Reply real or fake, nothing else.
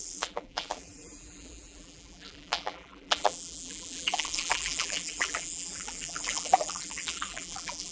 fake